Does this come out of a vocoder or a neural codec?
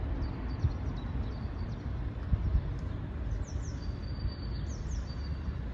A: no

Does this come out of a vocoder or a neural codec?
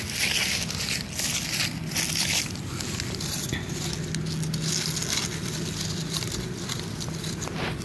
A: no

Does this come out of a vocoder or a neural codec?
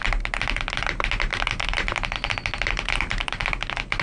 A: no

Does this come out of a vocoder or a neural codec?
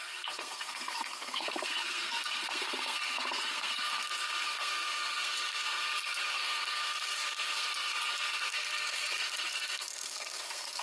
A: yes